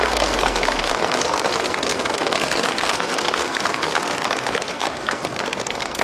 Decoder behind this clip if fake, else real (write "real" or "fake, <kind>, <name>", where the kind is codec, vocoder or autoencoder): fake, codec, SNAC